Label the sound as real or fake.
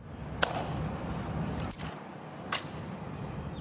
real